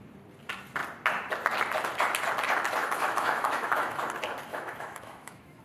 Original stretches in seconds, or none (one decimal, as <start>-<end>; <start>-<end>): 0.0-2.8; 4.0-4.5